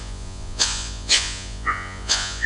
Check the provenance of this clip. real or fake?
fake